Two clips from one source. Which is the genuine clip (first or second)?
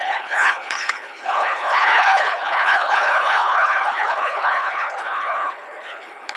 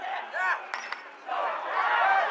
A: second